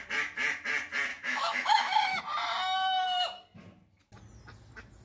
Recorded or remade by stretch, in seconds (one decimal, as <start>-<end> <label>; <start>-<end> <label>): 0.0-1.1 recorded; 1.1-2.2 remade; 2.2-5.0 recorded